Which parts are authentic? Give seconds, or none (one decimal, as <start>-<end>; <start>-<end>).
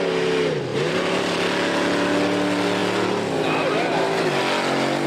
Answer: 0.0-0.7; 1.4-5.1